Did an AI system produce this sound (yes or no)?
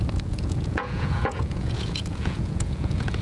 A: yes